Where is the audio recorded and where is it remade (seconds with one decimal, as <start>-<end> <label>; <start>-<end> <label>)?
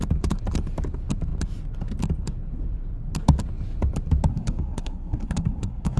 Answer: 0.0-4.3 recorded; 4.3-6.0 remade